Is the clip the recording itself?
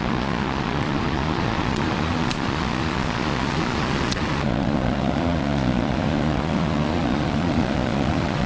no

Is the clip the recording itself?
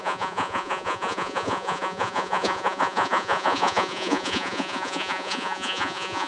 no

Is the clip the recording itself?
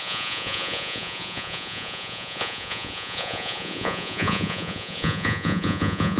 no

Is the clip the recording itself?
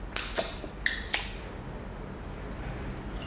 yes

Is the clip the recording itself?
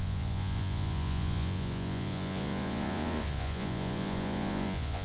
no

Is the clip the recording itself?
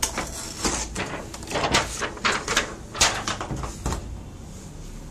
yes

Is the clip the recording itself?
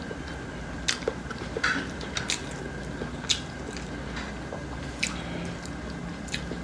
yes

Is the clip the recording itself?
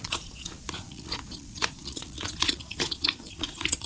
no